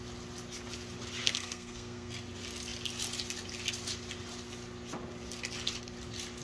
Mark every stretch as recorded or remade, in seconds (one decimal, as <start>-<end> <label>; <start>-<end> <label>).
0.0-1.2 recorded; 1.2-2.1 remade; 2.1-6.4 recorded